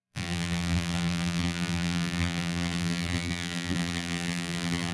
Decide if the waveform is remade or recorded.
remade